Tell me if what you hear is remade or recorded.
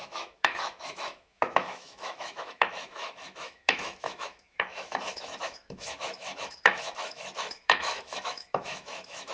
remade